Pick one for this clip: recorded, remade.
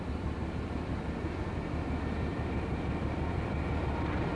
remade